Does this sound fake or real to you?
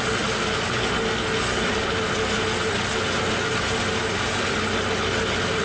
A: real